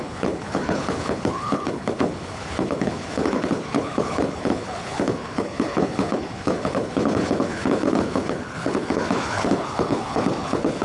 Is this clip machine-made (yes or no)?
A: yes